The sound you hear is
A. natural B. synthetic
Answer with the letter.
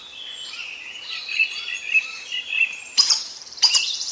B